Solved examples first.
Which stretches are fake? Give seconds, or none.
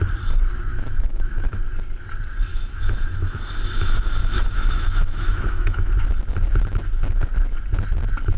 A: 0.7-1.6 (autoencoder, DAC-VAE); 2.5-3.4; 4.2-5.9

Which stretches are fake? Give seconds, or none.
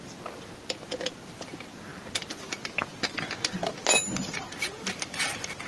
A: none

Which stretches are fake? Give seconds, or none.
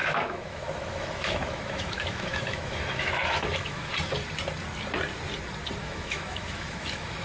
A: 0.0-3.9 (autoencoder, DAC-VAE); 5.8-7.2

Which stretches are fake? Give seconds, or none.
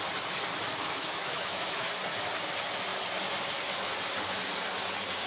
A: 0.8-1.9 (autoencoder, DAC-VAE)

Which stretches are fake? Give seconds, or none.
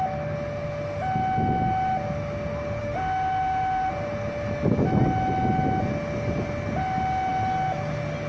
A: 2.8-3.9 (autoencoder, DAC-VAE)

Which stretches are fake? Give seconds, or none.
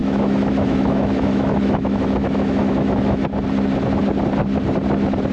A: 0.0-3.2 (autoencoder, DAC-VAE)